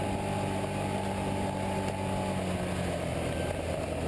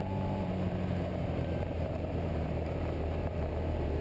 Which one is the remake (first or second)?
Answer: second